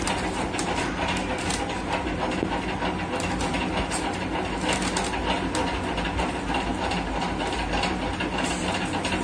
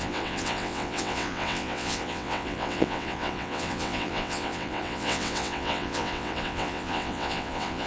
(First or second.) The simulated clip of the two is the second